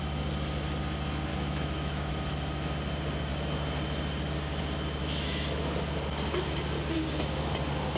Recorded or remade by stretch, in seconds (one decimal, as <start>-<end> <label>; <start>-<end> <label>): 0.0-1.3 recorded; 1.3-2.1 remade; 2.1-5.0 recorded; 5.0-5.6 remade; 5.6-8.0 recorded